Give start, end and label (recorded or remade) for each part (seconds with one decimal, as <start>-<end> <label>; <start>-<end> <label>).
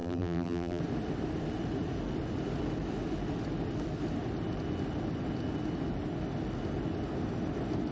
0.0-0.8 remade; 0.8-7.9 recorded